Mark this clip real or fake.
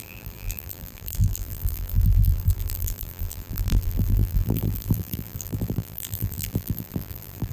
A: fake